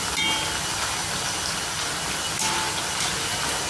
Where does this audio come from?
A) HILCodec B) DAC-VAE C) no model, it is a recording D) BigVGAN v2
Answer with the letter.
C